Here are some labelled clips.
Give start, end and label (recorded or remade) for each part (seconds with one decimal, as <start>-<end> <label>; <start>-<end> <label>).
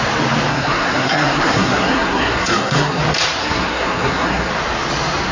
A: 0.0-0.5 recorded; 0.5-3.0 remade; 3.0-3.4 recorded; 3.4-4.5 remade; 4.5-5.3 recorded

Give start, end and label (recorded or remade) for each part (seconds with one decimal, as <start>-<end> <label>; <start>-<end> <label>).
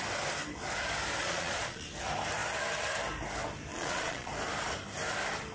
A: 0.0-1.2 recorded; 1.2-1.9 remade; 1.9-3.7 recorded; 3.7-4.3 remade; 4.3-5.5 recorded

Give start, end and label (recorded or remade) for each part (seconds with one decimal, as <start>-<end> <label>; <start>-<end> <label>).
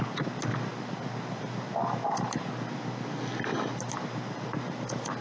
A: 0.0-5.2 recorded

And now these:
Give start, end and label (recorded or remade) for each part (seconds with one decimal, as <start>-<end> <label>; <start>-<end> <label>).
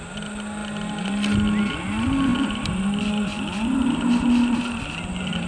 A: 0.0-5.5 recorded